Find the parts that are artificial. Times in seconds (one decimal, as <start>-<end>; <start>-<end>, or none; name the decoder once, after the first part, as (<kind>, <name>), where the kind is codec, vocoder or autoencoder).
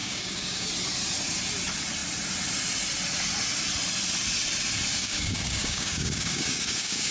0.0-0.7 (codec, DAC); 5.0-7.1